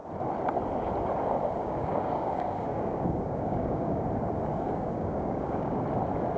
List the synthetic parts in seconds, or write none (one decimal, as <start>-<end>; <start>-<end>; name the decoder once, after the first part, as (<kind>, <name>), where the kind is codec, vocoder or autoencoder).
1.6-4.0 (codec, DAC); 4.5-5.8